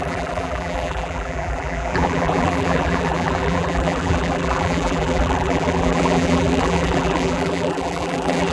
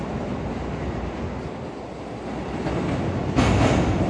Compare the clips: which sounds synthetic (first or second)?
first